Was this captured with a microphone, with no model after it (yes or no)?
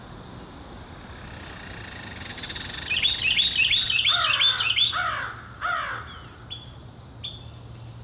yes